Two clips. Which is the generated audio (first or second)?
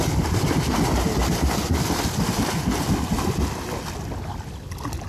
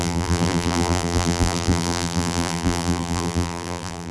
second